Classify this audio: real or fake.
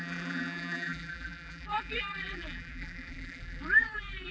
fake